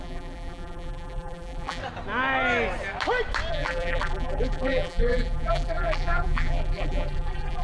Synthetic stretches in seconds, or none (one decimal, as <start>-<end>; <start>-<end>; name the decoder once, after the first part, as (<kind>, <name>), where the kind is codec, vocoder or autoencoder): 0.0-1.8 (vocoder, BigVGAN v2); 3.5-7.6